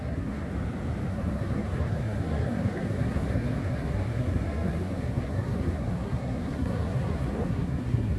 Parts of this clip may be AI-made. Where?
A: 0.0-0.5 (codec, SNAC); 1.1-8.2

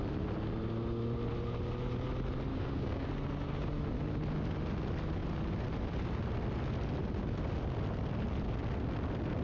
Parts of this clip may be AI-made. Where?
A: 2.5-3.1 (codec, DAC)